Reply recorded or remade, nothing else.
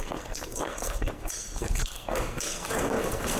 remade